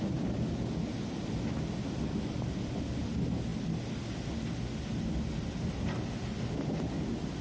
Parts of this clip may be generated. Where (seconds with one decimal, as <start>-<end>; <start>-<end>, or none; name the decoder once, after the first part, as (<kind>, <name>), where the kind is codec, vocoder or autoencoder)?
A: none